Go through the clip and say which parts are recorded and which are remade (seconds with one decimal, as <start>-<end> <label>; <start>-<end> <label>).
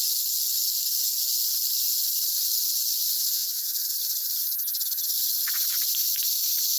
0.0-3.2 recorded; 3.2-3.7 remade; 3.7-6.8 recorded